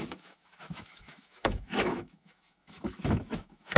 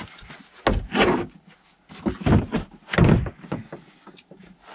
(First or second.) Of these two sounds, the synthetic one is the first